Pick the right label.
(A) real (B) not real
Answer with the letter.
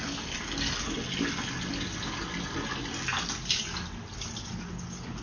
A